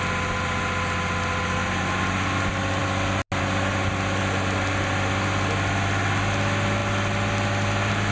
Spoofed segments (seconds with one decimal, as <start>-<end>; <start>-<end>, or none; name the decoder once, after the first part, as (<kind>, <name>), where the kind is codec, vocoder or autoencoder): none